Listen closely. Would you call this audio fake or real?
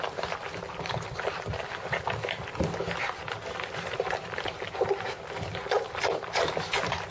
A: real